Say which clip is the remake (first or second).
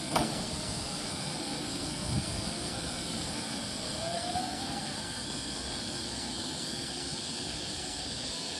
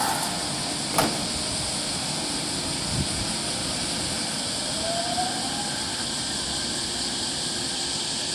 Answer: first